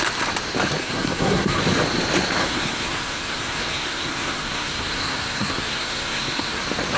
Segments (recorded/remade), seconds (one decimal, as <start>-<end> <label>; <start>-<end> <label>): 0.0-0.8 recorded; 0.8-1.6 remade; 1.6-2.4 recorded; 2.4-6.6 remade; 6.6-7.0 recorded